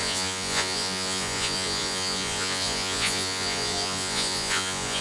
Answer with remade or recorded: remade